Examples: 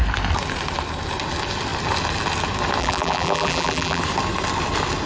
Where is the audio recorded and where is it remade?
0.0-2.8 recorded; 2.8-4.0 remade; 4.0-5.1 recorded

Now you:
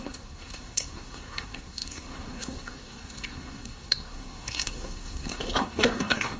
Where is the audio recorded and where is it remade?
0.0-6.4 remade

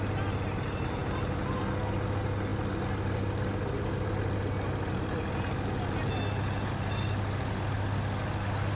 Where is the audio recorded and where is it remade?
0.0-8.8 recorded

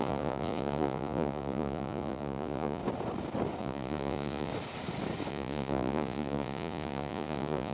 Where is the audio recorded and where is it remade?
0.0-2.8 remade; 2.8-3.6 recorded; 3.6-4.5 remade; 4.5-5.3 recorded; 5.3-7.7 remade

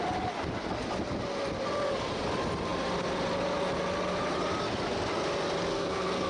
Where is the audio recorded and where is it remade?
0.0-5.7 recorded; 5.7-6.3 remade

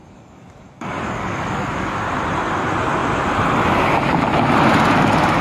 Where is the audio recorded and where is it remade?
0.0-2.0 remade; 2.0-5.4 recorded

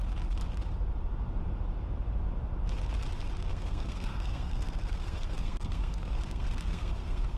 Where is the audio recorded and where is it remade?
0.0-3.5 recorded; 3.5-7.4 remade

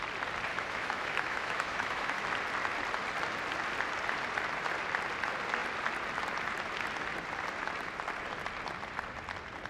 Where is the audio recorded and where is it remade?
0.0-0.5 recorded; 0.5-2.2 remade; 2.2-9.7 recorded